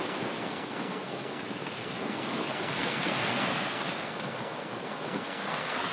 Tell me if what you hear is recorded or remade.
remade